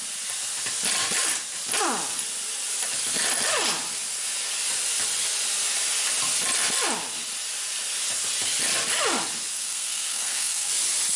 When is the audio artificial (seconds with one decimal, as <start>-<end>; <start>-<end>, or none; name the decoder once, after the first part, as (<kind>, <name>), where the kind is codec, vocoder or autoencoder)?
9.5-10.7 (codec, SNAC)